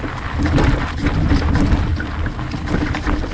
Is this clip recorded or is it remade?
remade